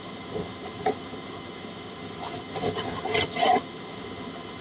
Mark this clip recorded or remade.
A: remade